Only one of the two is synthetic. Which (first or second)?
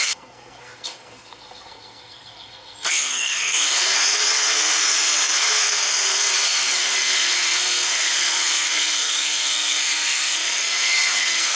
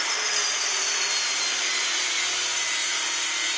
first